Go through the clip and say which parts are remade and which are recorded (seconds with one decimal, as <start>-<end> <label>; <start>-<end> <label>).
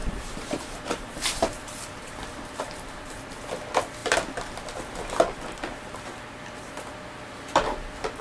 0.0-3.5 remade; 3.5-8.2 recorded